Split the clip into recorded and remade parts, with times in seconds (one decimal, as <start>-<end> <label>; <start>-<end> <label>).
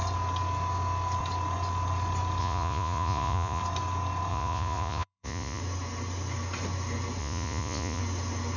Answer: 0.0-2.4 recorded; 2.4-3.6 remade; 3.6-4.3 recorded; 4.3-5.6 remade; 5.6-7.2 recorded; 7.2-8.0 remade; 8.0-8.6 recorded